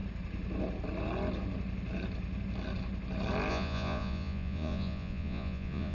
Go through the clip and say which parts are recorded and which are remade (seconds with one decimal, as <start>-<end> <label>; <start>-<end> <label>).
0.0-3.5 recorded; 3.5-5.9 remade